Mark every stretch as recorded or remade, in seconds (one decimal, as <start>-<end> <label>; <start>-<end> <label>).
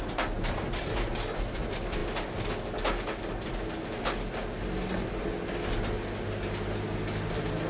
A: 0.0-7.7 recorded